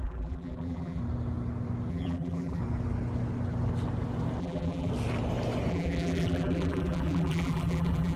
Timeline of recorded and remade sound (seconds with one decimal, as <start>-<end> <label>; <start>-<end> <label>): 0.0-1.0 remade; 1.0-1.9 recorded; 1.9-2.6 remade; 2.6-4.4 recorded; 4.4-4.9 remade; 4.9-5.7 recorded; 5.7-8.2 remade